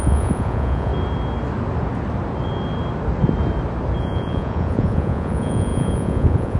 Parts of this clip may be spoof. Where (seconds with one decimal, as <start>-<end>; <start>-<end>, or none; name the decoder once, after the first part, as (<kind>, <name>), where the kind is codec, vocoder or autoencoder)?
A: 0.0-0.9 (vocoder, Vocos); 4.0-6.6